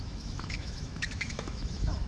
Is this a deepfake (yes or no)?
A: yes